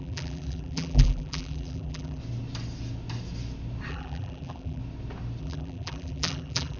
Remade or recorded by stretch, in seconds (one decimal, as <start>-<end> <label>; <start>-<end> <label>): 0.0-2.2 remade; 2.2-3.9 recorded; 3.9-4.8 remade; 4.8-5.4 recorded; 5.4-6.8 remade